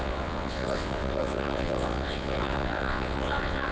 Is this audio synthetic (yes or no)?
yes